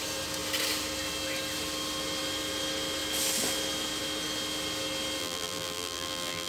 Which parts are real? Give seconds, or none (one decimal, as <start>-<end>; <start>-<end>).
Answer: 0.0-5.2